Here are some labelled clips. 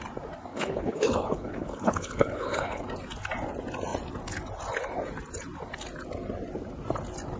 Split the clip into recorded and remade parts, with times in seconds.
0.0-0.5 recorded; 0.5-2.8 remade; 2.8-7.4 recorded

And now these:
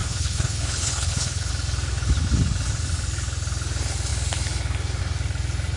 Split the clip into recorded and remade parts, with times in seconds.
0.0-1.5 remade; 1.5-5.8 recorded